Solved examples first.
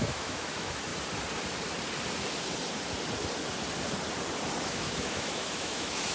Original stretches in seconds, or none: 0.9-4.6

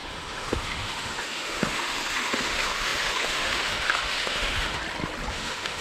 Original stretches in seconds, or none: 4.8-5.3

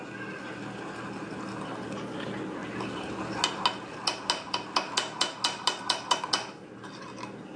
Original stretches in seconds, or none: 0.0-7.6

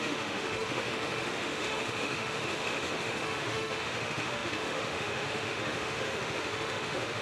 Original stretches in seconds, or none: none